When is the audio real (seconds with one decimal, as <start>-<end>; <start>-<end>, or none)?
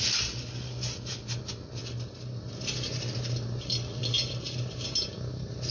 0.0-5.7